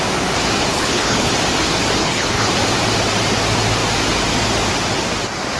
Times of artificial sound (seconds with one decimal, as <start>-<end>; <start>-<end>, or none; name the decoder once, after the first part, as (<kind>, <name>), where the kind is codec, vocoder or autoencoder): 0.7-1.3 (codec, HILCodec); 2.0-2.5